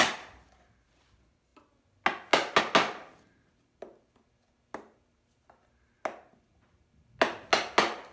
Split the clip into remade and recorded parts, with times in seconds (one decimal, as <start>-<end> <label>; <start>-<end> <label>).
0.0-8.1 recorded